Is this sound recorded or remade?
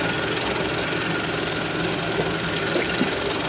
recorded